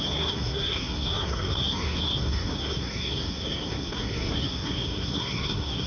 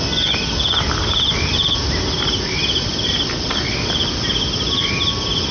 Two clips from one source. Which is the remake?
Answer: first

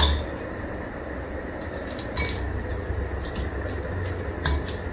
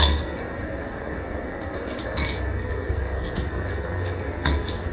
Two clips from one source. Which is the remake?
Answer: second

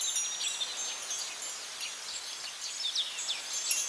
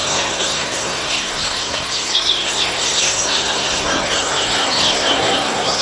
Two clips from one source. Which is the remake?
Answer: second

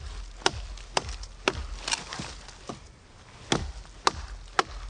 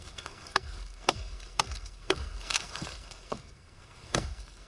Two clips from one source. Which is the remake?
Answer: second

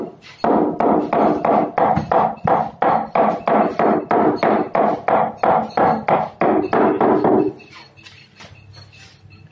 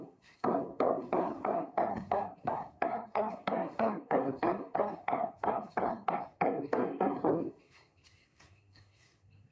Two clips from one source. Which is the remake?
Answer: second